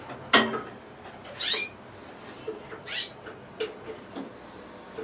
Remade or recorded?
recorded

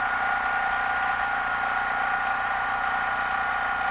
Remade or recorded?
recorded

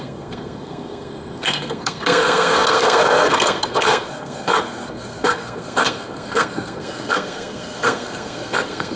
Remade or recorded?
remade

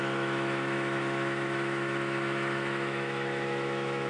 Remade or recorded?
remade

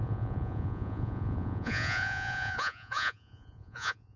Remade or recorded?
remade